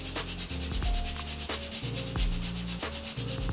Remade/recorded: recorded